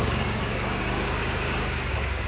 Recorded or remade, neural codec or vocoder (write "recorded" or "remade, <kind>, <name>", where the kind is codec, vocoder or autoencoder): remade, codec, DAC